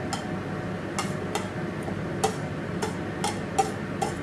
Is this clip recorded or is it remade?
recorded